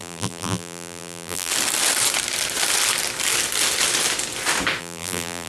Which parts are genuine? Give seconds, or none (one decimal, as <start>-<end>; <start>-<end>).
1.5-4.8